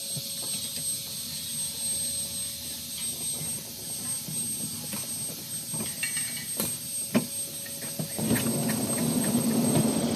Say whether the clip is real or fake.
real